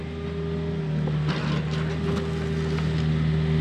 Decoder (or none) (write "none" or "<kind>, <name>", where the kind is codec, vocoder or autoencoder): none